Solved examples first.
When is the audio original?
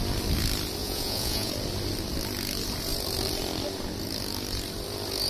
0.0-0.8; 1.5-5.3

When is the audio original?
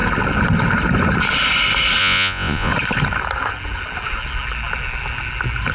0.0-2.0; 2.7-5.7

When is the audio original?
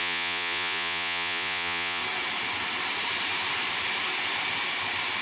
2.0-5.2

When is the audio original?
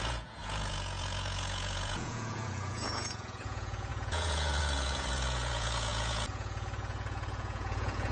none